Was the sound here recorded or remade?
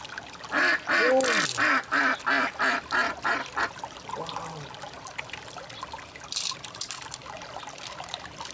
recorded